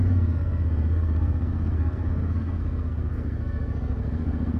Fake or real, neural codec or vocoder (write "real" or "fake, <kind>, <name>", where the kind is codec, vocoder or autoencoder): fake, codec, SNAC